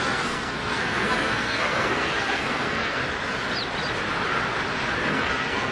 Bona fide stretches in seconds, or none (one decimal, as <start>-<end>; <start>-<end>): 3.0-5.1